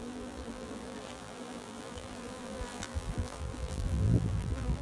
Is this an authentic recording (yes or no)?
no